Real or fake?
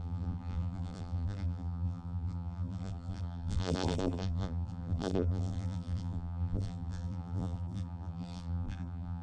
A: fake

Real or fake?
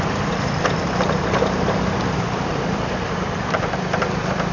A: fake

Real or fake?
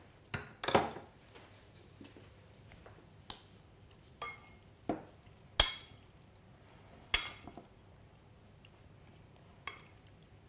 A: real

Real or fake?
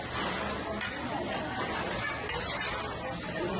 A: real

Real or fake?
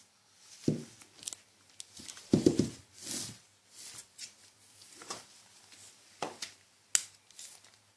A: real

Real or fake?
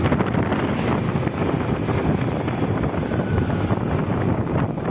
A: fake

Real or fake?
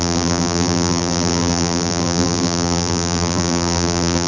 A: fake